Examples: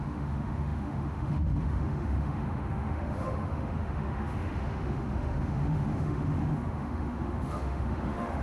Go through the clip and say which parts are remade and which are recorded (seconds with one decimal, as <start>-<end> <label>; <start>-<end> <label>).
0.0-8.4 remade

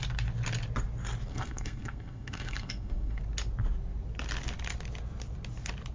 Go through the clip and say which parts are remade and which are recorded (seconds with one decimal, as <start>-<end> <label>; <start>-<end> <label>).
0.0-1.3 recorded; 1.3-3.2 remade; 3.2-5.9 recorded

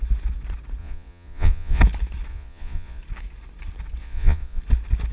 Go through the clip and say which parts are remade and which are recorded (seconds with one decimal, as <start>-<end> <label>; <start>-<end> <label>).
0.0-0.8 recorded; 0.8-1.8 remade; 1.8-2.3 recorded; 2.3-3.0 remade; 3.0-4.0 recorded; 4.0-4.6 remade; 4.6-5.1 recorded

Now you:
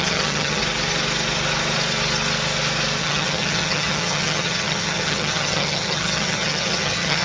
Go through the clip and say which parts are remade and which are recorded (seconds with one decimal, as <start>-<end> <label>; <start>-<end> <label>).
0.0-0.6 remade; 0.6-3.0 recorded; 3.0-7.2 remade

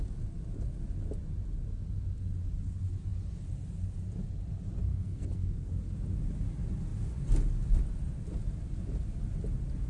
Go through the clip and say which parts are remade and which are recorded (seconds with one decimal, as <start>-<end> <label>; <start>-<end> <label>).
0.0-4.9 recorded; 4.9-5.7 remade; 5.7-9.9 recorded

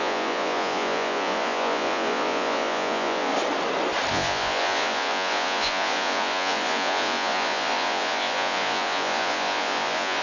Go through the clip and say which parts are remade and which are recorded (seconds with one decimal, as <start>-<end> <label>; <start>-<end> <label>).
0.0-3.3 remade; 3.3-4.1 recorded; 4.1-10.2 remade

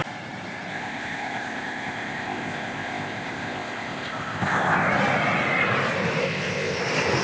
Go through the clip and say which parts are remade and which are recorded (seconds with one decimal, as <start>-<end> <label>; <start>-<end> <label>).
0.0-0.7 recorded; 0.7-4.9 remade; 4.9-6.2 recorded; 6.2-6.8 remade; 6.8-7.2 recorded